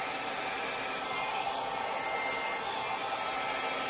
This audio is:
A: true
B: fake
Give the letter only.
A